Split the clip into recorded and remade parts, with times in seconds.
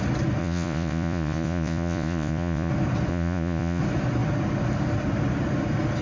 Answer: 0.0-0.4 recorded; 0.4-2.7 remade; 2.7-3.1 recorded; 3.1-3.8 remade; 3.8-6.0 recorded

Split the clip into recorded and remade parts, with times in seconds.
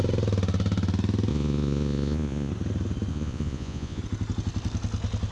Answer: 0.0-1.3 recorded; 1.3-2.5 remade; 2.5-3.1 recorded; 3.1-4.0 remade; 4.0-5.3 recorded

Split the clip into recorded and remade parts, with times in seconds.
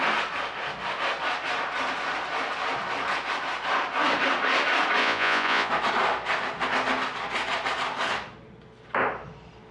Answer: 0.0-5.0 recorded; 5.0-5.7 remade; 5.7-9.7 recorded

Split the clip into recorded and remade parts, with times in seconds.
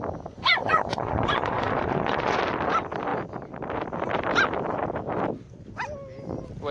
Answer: 0.0-0.4 recorded; 0.4-2.4 remade; 2.4-6.7 recorded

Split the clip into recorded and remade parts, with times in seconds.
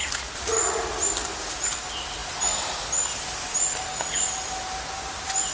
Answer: 0.0-0.8 remade; 0.8-5.5 recorded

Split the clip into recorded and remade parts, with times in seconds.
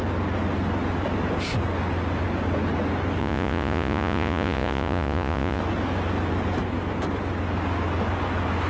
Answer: 0.0-3.2 recorded; 3.2-5.6 remade; 5.6-8.7 recorded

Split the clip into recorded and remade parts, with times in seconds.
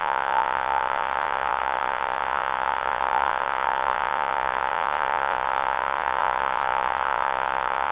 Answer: 0.0-7.9 remade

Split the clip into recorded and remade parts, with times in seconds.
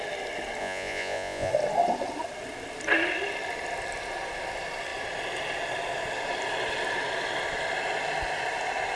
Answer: 0.0-0.6 recorded; 0.6-1.5 remade; 1.5-9.0 recorded